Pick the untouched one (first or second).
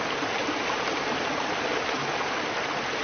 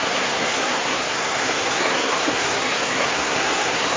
first